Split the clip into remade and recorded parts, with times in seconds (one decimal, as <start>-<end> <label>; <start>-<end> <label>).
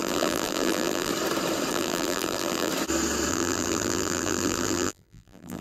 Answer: 0.0-1.1 remade; 1.1-1.7 recorded; 1.7-2.7 remade; 2.7-3.3 recorded; 3.3-5.6 remade